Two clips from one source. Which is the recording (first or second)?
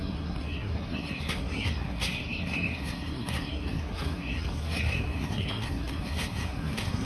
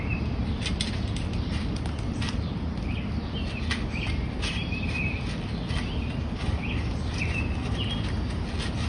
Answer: second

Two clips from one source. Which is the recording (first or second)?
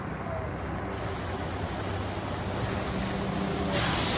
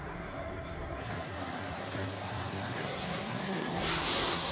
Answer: first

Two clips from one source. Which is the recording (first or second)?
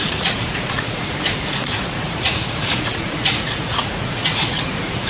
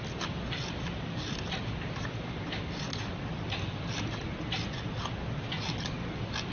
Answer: second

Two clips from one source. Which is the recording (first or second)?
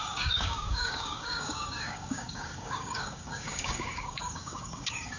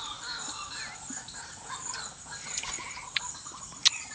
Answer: second